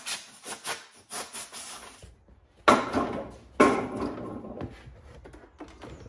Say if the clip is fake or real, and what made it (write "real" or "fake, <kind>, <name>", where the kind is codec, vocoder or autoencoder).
real